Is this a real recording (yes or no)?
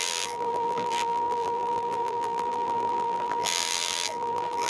no